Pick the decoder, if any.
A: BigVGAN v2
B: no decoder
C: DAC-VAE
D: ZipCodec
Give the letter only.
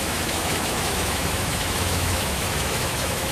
C